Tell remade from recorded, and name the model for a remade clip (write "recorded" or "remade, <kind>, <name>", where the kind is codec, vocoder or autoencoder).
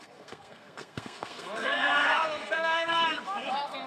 remade, codec, SNAC